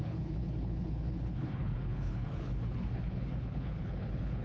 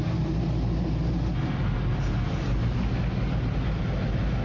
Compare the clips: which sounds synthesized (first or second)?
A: first